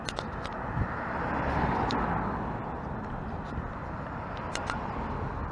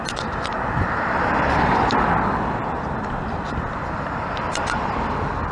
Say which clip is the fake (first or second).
second